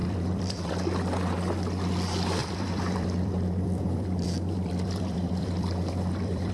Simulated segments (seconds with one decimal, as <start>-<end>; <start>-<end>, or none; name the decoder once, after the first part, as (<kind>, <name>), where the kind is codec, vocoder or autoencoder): 0.0-0.7 (vocoder, BigVGAN v2); 2.4-6.5